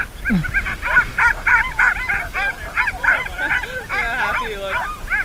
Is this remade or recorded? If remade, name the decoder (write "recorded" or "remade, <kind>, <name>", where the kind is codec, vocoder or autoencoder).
recorded